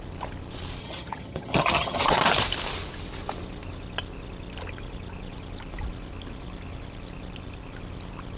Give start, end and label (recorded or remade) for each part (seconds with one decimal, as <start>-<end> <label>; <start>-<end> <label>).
0.0-0.8 recorded; 0.8-2.2 remade; 2.2-8.4 recorded